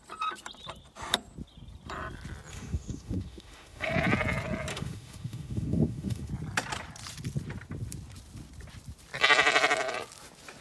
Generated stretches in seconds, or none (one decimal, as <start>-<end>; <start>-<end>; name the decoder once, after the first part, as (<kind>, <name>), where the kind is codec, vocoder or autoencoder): 2.5-3.9 (autoencoder, DAC-VAE); 4.7-6.3